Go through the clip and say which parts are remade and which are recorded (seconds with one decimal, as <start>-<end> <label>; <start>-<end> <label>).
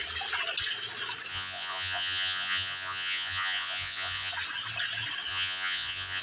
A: 0.0-1.3 recorded; 1.3-4.3 remade; 4.3-5.3 recorded; 5.3-6.2 remade